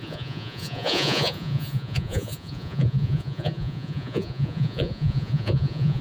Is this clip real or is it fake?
fake